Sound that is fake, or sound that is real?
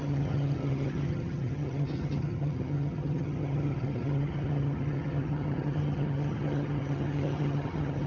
fake